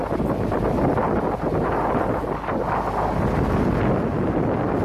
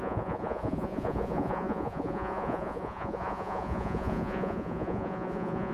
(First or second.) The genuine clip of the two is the first